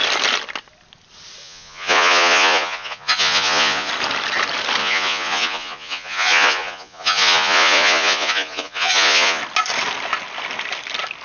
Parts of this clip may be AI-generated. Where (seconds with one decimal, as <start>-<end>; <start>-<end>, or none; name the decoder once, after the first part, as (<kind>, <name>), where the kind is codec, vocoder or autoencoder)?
1.4-3.9 (vocoder, Vocos); 4.8-9.4